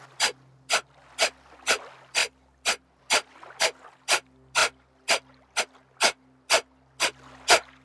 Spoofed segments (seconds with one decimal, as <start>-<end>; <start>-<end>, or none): none